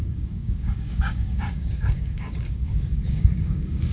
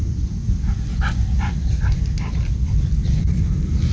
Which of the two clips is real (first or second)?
second